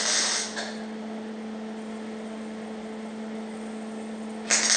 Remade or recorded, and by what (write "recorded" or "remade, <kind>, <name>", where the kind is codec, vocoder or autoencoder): recorded